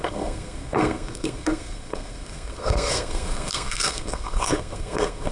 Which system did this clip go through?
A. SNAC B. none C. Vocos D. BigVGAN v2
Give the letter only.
A